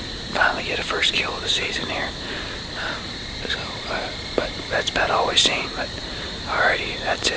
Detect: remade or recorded remade